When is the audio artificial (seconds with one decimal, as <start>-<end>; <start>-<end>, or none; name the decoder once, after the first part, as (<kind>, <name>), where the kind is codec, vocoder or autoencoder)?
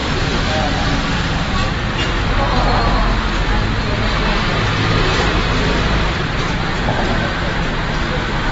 5.1-7.8 (vocoder, BigVGAN v2)